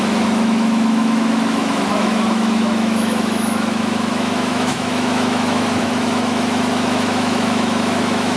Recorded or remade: remade